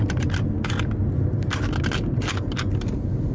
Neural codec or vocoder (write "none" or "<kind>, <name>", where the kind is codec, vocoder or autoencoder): none